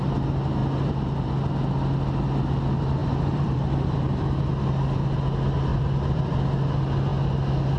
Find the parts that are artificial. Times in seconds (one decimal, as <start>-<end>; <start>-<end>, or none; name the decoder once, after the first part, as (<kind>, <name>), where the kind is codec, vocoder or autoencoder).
3.0-4.4 (vocoder, BigVGAN v2); 5.7-6.4